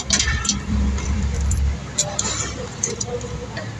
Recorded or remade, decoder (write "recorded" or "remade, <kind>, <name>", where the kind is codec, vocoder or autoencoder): remade, vocoder, BigVGAN v2